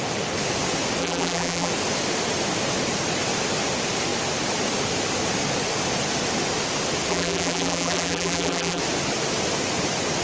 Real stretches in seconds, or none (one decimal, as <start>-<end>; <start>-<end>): 0.0-1.0; 1.7-7.1; 8.8-10.2